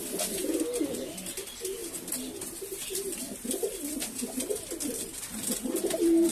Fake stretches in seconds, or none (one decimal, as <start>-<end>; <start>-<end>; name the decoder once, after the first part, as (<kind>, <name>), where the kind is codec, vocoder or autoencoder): none